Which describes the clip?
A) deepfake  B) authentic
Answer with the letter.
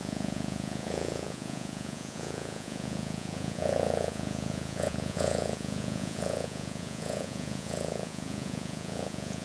A